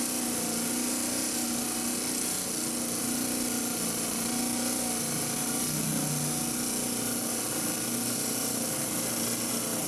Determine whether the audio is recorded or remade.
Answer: recorded